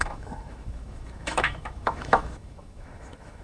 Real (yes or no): no